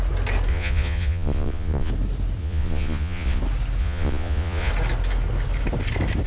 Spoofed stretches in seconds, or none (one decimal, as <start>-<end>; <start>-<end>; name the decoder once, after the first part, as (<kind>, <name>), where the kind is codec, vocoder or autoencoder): 0.5-1.9 (vocoder, Vocos); 2.4-3.4; 3.8-4.7

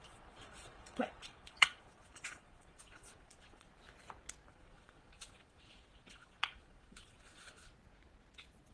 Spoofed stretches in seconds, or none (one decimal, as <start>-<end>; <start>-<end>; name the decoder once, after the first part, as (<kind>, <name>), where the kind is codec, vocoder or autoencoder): 0.0-3.7 (vocoder, Vocos); 4.5-7.7

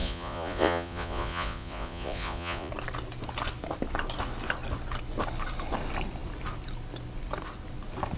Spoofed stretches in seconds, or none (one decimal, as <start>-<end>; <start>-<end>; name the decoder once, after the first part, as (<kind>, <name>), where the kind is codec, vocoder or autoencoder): 0.0-2.7 (vocoder, Vocos)